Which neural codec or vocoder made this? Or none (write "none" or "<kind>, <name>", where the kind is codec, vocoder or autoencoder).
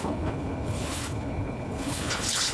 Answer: codec, HILCodec